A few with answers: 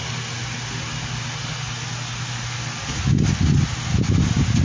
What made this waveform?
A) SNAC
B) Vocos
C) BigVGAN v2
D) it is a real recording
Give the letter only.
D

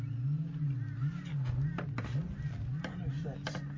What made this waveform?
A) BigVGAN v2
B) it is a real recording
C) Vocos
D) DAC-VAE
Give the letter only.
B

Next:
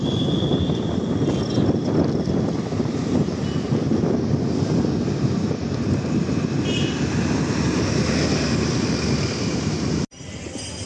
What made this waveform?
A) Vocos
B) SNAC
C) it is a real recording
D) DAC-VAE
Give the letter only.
C